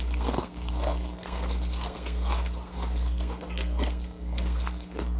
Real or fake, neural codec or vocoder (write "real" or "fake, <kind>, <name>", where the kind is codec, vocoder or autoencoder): fake, codec, SNAC